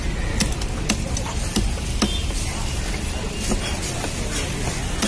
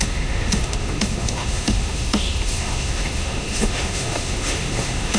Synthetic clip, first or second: second